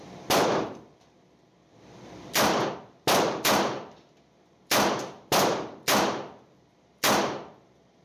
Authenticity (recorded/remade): remade